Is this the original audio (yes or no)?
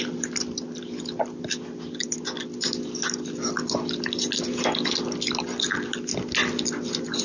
yes